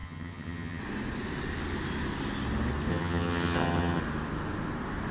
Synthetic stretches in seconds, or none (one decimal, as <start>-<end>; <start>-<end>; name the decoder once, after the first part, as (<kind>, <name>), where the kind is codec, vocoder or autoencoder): 0.0-0.8 (vocoder, HiFi-GAN); 2.9-4.0